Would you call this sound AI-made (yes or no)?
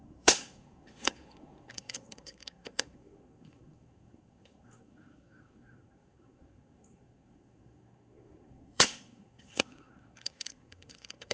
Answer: yes